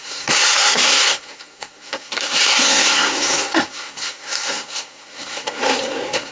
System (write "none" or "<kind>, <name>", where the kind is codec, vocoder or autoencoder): codec, SNAC